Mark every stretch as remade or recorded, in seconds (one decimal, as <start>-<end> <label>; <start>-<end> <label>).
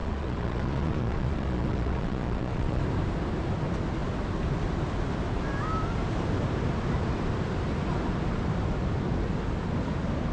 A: 0.0-2.8 remade; 2.8-10.3 recorded